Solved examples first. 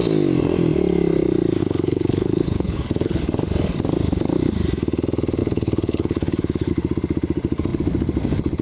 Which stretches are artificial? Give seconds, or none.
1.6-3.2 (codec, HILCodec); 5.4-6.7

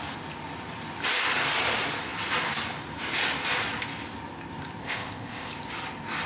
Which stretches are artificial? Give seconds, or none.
4.8-5.5 (codec, ZipCodec)

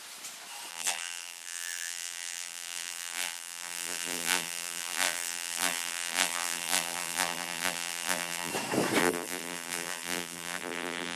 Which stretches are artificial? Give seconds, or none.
0.7-8.5 (vocoder, BigVGAN v2); 9.0-11.2

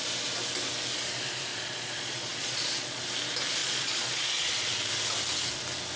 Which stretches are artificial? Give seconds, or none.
1.5-3.0 (vocoder, Vocos); 3.6-4.7